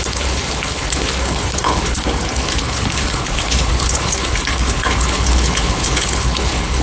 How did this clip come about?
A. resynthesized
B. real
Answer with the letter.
A